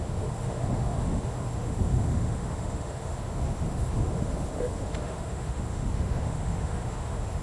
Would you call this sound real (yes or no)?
no